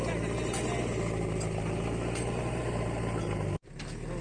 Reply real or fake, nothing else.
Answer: real